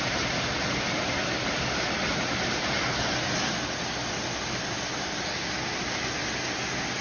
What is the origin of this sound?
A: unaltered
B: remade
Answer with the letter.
A